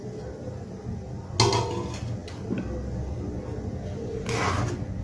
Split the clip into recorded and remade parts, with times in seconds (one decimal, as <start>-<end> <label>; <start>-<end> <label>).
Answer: 0.0-5.0 recorded

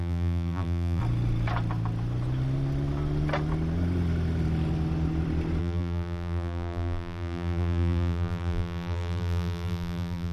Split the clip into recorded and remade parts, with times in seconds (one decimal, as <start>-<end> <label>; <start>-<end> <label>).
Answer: 0.0-1.0 remade; 1.0-5.6 recorded; 5.6-10.3 remade

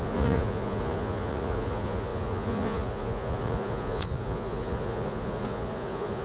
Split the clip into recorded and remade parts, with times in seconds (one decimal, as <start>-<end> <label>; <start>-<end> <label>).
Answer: 0.0-6.2 remade